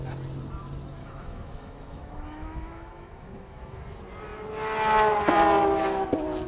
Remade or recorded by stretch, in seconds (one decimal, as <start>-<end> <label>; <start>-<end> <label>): 0.0-1.0 recorded; 1.0-3.8 remade; 3.8-6.5 recorded